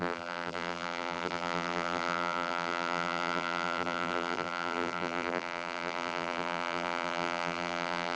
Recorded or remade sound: remade